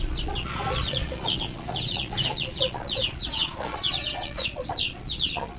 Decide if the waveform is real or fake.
fake